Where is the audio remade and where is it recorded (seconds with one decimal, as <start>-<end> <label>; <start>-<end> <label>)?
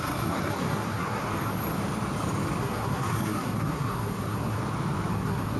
0.0-1.3 remade; 1.3-2.6 recorded; 2.6-4.6 remade; 4.6-5.1 recorded; 5.1-5.6 remade